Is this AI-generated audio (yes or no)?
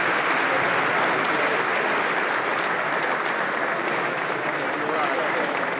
no